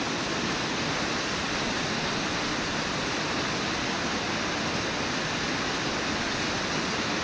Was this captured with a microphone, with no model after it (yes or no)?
yes